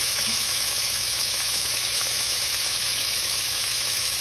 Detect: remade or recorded remade